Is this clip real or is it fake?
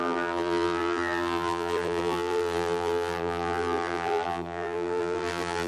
fake